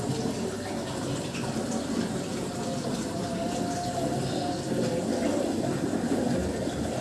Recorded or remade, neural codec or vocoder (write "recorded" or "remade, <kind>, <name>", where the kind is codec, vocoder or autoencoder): recorded